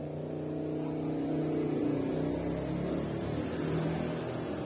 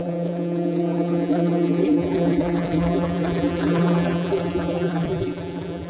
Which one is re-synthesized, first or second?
second